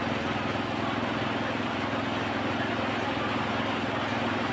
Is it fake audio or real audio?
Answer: real